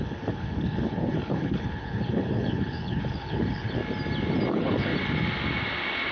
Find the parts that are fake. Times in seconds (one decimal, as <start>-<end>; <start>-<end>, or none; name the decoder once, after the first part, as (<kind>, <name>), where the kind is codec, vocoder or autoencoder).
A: 0.0-3.8 (codec, HILCodec); 4.5-4.9